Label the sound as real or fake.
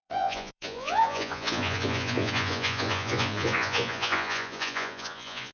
fake